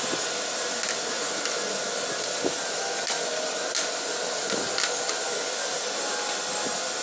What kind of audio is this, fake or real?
real